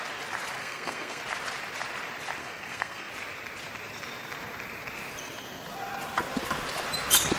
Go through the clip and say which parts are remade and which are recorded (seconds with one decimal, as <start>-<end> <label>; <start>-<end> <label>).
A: 0.0-0.6 recorded; 0.6-1.2 remade; 1.2-2.4 recorded; 2.4-3.1 remade; 3.1-7.4 recorded